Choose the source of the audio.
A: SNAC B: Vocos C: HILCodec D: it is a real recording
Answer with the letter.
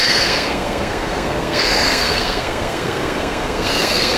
A